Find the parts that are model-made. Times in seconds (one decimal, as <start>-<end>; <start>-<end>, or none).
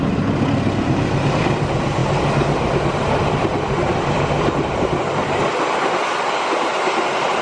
none